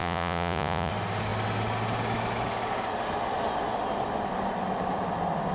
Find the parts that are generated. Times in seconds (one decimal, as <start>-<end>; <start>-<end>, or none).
0.0-0.9